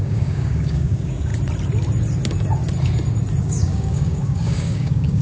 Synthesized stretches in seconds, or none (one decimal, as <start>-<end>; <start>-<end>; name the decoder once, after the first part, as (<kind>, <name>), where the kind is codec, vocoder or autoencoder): 0.0-1.3 (codec, DAC); 3.4-5.2